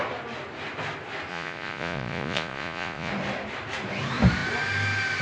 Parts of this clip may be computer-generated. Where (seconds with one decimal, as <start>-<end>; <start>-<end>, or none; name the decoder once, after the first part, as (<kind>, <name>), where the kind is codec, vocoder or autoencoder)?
1.3-3.1 (vocoder, Vocos)